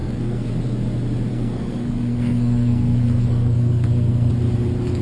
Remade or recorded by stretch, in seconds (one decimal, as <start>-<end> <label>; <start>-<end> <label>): 0.0-0.5 remade; 0.5-1.3 recorded; 1.3-4.3 remade; 4.3-5.0 recorded